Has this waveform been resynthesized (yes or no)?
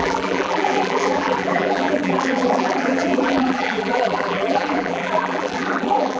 yes